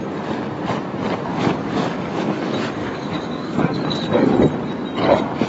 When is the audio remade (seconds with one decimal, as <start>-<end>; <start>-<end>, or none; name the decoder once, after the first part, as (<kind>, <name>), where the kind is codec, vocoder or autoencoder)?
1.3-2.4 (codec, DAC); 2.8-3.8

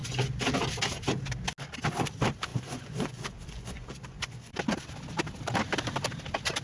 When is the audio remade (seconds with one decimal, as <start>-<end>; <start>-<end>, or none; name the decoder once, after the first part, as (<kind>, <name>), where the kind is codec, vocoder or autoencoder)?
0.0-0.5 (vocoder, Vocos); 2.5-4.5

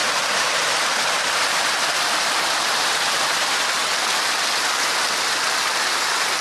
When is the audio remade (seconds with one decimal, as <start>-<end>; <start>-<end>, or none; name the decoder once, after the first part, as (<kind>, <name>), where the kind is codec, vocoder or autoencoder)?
0.0-3.8 (vocoder, BigVGAN v2)

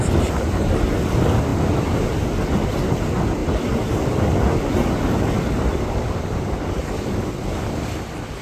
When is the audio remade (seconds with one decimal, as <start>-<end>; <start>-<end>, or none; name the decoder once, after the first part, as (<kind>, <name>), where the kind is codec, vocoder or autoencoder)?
1.5-2.1 (vocoder, BigVGAN v2); 3.4-4.7

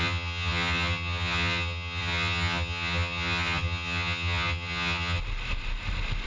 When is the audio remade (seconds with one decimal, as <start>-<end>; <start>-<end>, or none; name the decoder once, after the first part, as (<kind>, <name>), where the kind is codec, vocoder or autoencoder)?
0.0-5.2 (vocoder, HiFi-GAN)

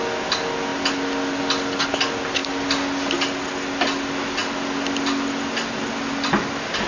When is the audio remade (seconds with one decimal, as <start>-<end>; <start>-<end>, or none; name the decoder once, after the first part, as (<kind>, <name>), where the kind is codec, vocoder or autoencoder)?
none

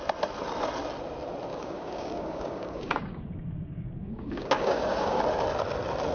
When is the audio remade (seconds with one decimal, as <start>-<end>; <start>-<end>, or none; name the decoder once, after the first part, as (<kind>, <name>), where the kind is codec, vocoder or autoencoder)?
1.5-5.2 (codec, DAC)

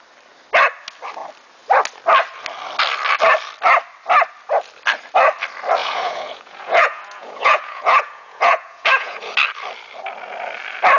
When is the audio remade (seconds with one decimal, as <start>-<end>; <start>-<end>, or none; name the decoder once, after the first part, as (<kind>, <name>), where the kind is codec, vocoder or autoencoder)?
5.8-9.3 (vocoder, Vocos)